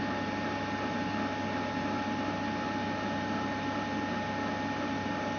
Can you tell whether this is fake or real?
real